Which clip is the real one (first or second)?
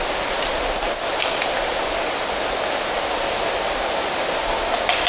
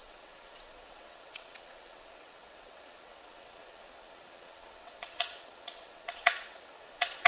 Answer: first